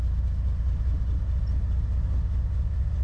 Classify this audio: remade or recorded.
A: recorded